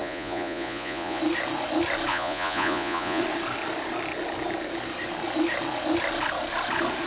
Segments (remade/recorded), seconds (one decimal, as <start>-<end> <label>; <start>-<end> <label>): 0.0-1.2 remade; 1.2-2.1 recorded; 2.1-3.2 remade; 3.2-7.1 recorded